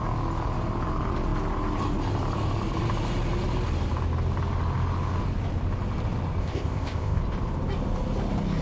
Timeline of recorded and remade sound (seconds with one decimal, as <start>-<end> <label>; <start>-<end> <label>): 0.0-6.4 recorded; 6.4-7.2 remade; 7.2-8.6 recorded